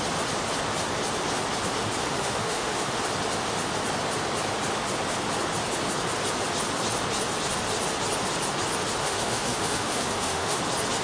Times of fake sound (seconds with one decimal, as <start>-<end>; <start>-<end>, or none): 2.0-3.0; 9.0-10.6